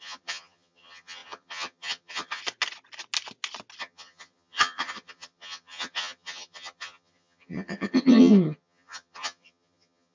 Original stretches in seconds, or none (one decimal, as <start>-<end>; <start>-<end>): 2.4-3.8